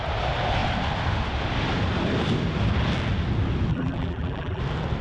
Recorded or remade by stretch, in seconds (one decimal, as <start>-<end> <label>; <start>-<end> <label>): 0.0-3.7 recorded; 3.7-4.6 remade; 4.6-5.0 recorded